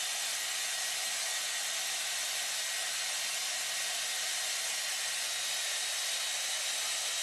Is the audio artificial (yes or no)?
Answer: no